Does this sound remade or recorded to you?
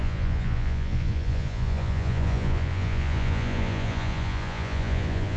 remade